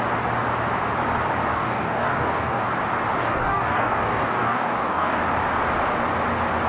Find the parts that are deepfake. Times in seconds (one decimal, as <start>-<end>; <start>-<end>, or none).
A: 1.5-2.7; 3.2-5.2